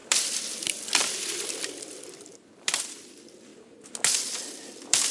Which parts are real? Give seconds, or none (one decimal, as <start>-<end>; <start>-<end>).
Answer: 3.5-4.5